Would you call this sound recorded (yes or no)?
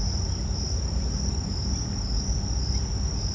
yes